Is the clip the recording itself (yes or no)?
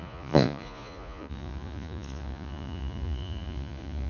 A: no